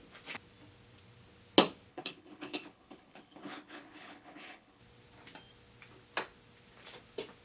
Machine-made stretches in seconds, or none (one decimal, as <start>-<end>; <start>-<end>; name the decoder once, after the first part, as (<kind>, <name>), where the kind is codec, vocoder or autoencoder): 1.9-4.8 (codec, HILCodec)